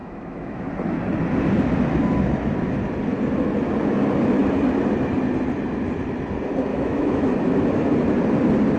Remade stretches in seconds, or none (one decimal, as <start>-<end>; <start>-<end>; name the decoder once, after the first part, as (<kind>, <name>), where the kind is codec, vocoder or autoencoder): 0.0-0.7 (autoencoder, DAC-VAE); 6.7-7.3